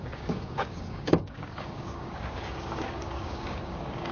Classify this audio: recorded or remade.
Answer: remade